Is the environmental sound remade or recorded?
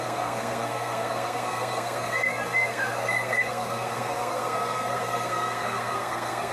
remade